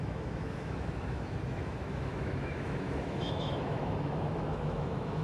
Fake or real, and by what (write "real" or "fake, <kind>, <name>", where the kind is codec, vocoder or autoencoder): fake, autoencoder, DAC-VAE